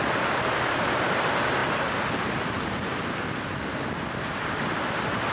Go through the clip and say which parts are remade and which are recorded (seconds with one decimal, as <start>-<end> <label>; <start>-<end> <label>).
0.0-5.3 recorded